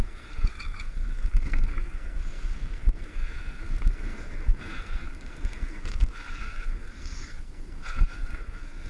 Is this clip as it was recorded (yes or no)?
no